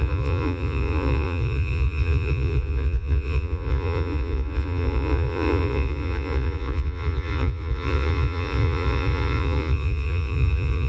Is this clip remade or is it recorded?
remade